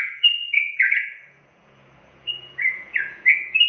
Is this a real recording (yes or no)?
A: no